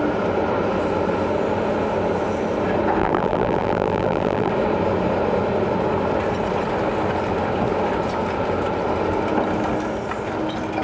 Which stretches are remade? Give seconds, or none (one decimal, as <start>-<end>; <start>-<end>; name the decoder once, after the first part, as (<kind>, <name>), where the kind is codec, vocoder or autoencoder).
3.0-4.5 (vocoder, BigVGAN v2)